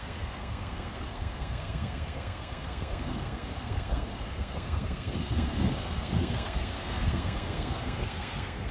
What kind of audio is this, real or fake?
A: fake